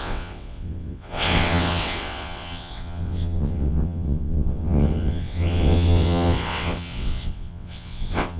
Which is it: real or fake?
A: fake